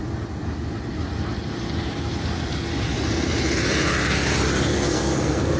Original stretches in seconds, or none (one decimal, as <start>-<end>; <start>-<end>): 0.0-4.7